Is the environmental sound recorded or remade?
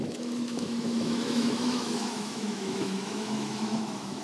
remade